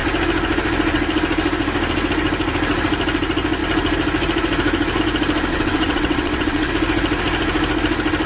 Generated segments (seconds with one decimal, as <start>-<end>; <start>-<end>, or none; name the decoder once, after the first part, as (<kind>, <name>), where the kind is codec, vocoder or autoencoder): 5.5-6.7 (vocoder, WaveNeXt)